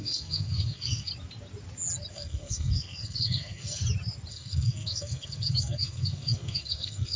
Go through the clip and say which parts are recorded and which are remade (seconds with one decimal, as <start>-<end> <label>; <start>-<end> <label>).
0.0-1.1 remade; 1.1-2.1 recorded; 2.1-3.8 remade; 3.8-4.3 recorded; 4.3-7.2 remade